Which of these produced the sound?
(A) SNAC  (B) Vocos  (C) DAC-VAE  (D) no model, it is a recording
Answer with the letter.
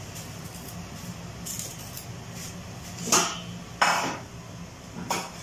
D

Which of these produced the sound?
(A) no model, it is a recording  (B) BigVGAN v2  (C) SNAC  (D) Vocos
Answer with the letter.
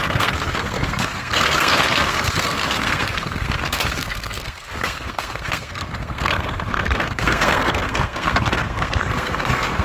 C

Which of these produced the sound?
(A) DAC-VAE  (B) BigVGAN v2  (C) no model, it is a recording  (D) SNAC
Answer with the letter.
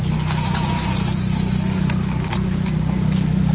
C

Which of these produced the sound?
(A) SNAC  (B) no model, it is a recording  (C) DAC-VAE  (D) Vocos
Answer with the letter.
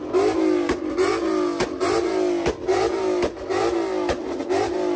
B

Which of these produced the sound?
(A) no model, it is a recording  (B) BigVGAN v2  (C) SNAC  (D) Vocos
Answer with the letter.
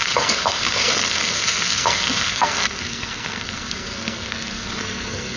C